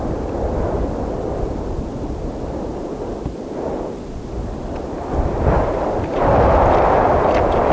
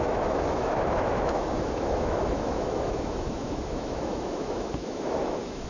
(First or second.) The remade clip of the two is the second